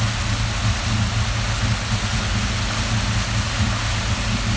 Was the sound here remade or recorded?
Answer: recorded